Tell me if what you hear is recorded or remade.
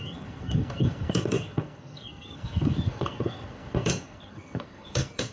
remade